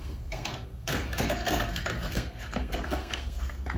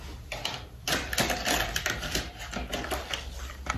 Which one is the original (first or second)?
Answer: second